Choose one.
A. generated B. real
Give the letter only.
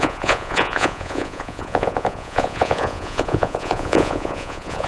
A